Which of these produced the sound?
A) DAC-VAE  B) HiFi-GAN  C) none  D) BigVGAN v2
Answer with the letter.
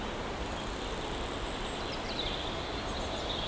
C